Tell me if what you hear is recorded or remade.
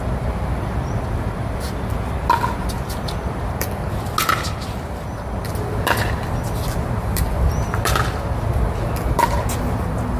recorded